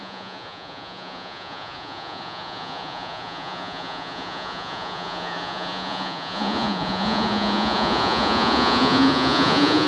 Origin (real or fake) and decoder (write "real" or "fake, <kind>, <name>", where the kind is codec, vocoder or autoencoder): fake, vocoder, Vocos